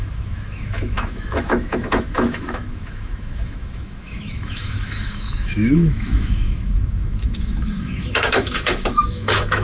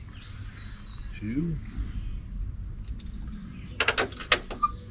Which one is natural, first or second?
second